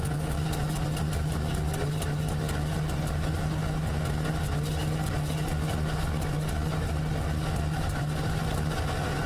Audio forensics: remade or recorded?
recorded